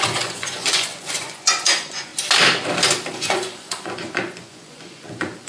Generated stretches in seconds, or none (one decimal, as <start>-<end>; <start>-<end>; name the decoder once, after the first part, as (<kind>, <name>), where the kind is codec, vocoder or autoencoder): 0.0-2.1 (vocoder, Vocos); 3.1-5.5